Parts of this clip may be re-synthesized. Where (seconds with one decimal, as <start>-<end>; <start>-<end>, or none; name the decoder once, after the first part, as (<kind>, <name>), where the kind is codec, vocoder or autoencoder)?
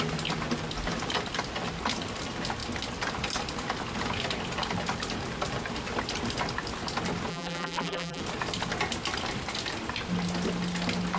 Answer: 7.3-8.2 (vocoder, BigVGAN v2)